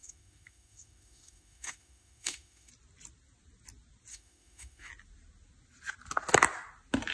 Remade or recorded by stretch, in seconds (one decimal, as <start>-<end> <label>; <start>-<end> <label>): 0.0-2.7 remade; 2.7-4.1 recorded; 4.1-4.9 remade; 4.9-7.1 recorded